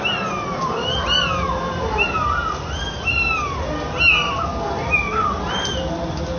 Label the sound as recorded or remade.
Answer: recorded